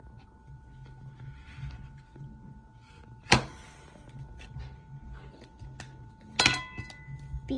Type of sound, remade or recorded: recorded